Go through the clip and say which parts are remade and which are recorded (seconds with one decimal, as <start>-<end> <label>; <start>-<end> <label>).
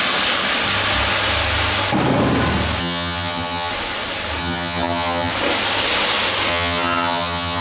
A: 0.0-2.8 recorded; 2.8-3.7 remade; 3.7-4.4 recorded; 4.4-5.3 remade; 5.3-6.5 recorded; 6.5-7.6 remade